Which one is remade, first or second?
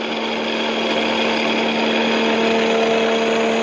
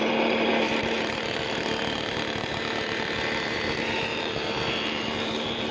second